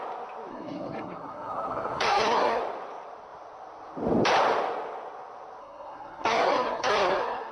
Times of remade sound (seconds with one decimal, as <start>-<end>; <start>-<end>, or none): 0.5-2.6; 5.6-7.5